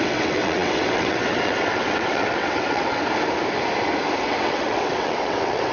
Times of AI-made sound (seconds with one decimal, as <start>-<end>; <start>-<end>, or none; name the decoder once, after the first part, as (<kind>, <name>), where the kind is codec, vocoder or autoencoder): 0.0-3.0 (vocoder, WaveNeXt); 4.2-5.7